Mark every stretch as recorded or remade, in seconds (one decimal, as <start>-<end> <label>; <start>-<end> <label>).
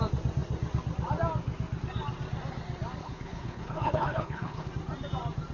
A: 0.0-3.0 recorded; 3.0-4.7 remade; 4.7-5.5 recorded